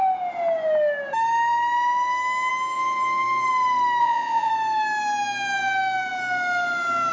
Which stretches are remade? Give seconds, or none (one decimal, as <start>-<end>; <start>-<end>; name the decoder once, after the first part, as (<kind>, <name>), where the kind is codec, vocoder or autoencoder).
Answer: 4.0-4.5 (vocoder, Vocos)